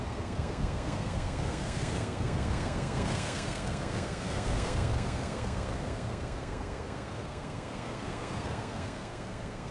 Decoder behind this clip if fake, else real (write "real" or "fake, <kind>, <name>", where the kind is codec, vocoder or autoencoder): fake, codec, SNAC